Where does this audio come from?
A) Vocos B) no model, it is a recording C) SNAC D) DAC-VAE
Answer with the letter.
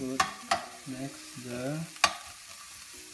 B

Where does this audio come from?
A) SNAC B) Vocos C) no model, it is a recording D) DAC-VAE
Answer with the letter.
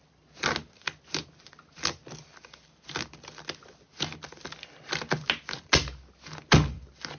C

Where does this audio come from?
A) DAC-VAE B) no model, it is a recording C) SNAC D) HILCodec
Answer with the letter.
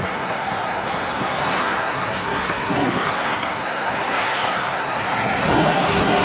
C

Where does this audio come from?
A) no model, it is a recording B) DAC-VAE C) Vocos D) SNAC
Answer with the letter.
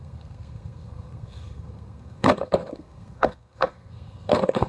D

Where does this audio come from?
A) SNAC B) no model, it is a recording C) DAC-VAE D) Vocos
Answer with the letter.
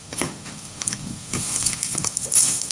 A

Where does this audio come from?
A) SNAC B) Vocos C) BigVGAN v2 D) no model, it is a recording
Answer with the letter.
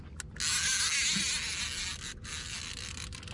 D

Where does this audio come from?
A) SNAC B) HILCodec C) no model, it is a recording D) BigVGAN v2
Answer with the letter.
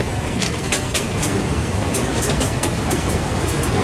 A